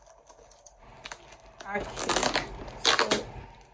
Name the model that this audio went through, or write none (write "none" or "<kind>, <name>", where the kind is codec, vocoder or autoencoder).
none